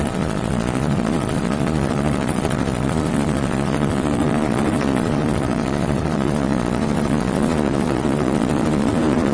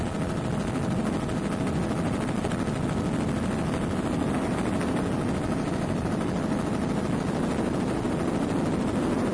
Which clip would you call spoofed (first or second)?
first